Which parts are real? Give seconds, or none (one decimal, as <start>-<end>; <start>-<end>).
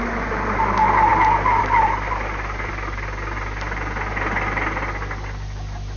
0.0-6.0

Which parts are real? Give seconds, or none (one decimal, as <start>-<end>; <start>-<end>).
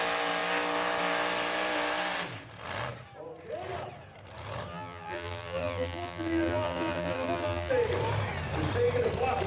0.0-4.7; 7.7-9.5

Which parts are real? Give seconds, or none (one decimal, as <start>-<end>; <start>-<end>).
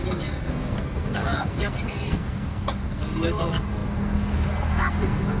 none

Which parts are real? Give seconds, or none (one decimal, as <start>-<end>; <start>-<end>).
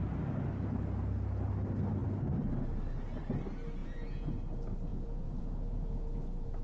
0.0-3.8; 4.3-4.9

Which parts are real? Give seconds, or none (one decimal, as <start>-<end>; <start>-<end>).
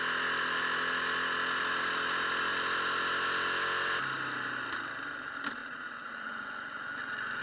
0.0-5.6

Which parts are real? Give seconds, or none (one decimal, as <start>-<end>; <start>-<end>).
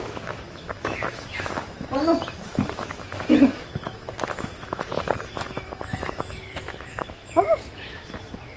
none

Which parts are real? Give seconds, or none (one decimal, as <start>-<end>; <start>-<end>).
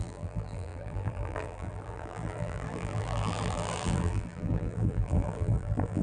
none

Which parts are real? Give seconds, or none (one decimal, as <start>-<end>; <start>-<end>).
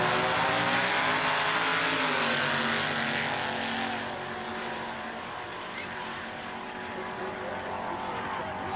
0.0-4.5; 7.3-8.8